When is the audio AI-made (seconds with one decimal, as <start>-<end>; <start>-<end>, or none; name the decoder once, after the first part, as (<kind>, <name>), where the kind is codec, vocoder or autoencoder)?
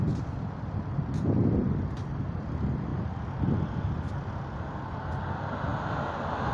none